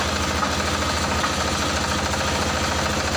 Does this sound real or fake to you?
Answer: real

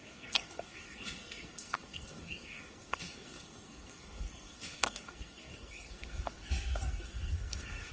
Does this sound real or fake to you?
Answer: fake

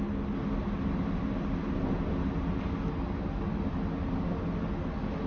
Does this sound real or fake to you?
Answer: real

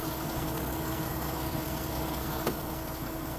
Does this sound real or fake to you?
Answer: fake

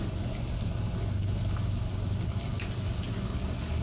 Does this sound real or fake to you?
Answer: real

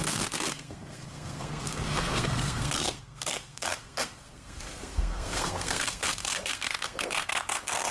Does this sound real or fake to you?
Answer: fake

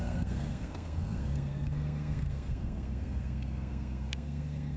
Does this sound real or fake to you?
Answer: fake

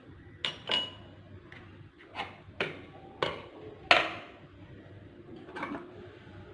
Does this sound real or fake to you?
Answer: real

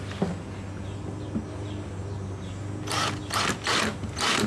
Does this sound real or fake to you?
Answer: real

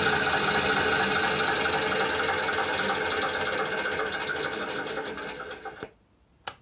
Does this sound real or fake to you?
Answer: real